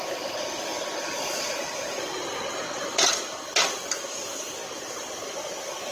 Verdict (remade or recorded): recorded